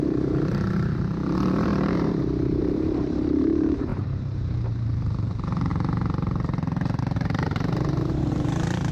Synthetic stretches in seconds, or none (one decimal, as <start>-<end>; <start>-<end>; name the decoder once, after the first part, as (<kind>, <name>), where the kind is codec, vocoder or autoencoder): 0.0-1.7 (vocoder, BigVGAN v2); 2.6-5.7; 7.0-8.9